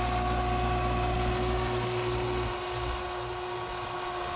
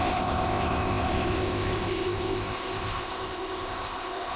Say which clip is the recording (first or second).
first